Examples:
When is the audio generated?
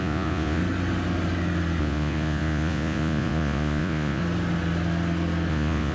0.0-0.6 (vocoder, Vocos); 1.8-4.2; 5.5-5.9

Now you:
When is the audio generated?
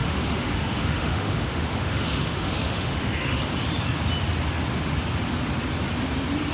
0.0-3.4 (autoencoder, DAC-VAE)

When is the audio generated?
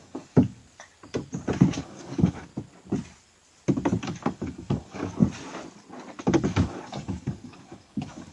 0.0-0.6 (codec, DAC); 1.8-2.5; 4.0-5.2; 6.2-8.3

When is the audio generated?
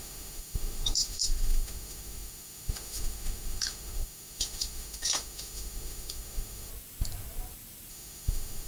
0.0-6.7 (autoencoder, DAC-VAE); 7.9-8.7